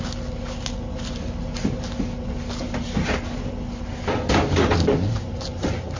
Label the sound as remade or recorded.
recorded